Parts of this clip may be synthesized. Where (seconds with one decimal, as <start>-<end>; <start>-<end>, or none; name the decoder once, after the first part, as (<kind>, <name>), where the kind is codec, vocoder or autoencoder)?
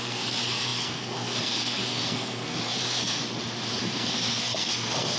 0.0-3.2 (codec, SNAC); 3.7-5.2